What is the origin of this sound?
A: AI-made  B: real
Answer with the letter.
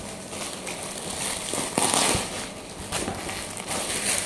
B